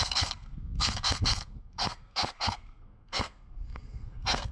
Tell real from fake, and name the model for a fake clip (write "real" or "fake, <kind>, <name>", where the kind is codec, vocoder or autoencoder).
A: fake, codec, SNAC